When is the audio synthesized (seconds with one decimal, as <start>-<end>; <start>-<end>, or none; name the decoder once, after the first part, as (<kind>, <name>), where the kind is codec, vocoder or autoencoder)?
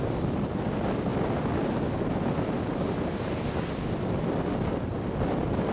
none